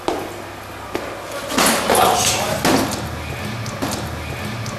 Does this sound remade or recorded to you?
recorded